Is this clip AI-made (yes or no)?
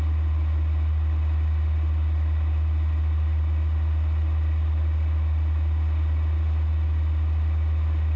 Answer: no